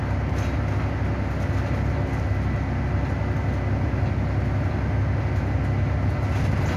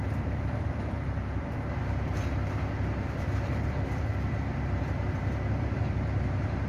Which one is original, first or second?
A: first